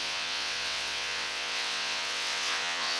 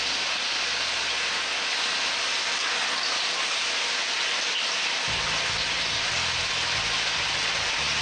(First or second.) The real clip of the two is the second